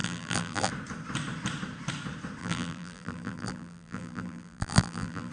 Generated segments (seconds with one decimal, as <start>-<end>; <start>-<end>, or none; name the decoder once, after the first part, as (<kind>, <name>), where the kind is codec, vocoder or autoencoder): 0.0-0.7 (vocoder, BigVGAN v2); 2.4-5.3